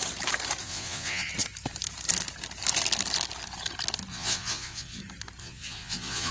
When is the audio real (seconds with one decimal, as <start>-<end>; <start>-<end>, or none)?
0.0-0.6; 1.3-4.1; 5.0-5.4

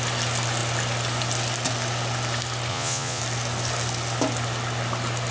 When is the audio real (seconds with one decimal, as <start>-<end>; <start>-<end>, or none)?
0.0-2.7; 3.2-5.3

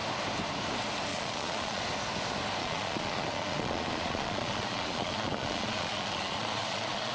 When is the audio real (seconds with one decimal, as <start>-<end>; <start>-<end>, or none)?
0.0-1.1; 1.8-2.6